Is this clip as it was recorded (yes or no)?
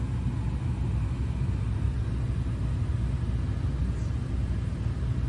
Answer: yes